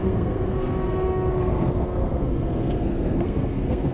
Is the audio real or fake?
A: fake